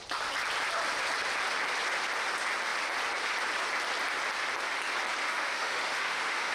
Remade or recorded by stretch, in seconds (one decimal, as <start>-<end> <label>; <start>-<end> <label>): 0.0-5.2 recorded; 5.2-6.5 remade